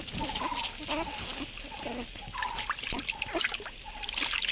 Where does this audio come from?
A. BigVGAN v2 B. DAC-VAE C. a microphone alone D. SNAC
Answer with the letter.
C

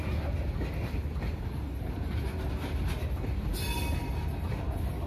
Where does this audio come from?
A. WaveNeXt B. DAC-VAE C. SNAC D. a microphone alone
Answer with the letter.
D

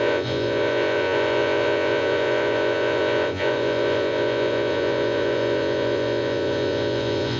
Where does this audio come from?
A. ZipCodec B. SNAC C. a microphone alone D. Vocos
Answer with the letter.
D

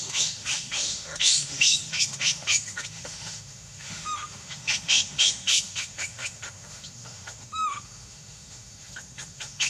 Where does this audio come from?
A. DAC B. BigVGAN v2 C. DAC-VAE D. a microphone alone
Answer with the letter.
C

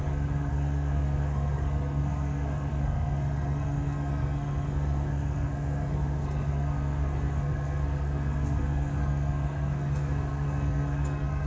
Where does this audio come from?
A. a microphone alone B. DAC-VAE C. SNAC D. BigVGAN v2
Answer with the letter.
C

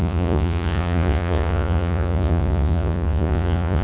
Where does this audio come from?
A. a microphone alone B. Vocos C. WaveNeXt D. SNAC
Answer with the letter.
B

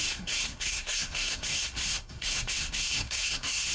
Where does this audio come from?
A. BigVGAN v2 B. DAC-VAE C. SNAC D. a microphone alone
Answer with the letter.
C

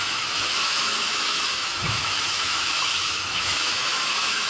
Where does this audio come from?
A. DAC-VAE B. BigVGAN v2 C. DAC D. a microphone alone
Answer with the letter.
A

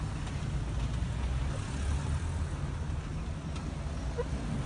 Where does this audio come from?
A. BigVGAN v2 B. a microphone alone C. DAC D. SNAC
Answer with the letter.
B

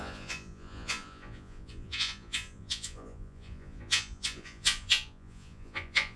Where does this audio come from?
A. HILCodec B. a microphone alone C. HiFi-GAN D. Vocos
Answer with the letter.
D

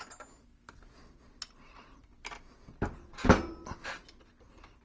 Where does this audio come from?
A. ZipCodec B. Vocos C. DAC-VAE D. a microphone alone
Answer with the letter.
D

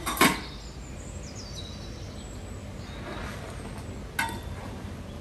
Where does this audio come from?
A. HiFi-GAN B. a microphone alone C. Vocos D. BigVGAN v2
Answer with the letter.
B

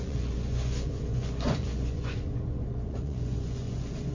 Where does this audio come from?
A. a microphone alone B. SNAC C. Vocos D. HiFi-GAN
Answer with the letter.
C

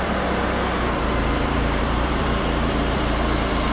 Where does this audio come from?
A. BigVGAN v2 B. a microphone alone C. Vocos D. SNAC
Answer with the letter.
A